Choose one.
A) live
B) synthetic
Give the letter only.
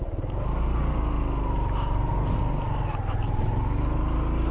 A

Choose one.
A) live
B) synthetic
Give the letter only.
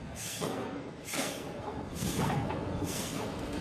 B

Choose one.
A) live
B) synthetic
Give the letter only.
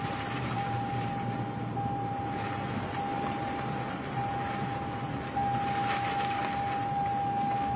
A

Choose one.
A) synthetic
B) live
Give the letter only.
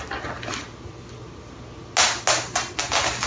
B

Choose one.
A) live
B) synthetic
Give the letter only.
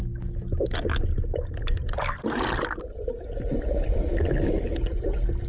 A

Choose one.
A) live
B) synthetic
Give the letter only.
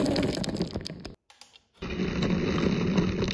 A